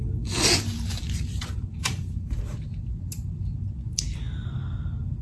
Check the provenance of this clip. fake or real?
real